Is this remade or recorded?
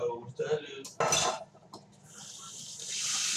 recorded